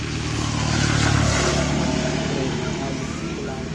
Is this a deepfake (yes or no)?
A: no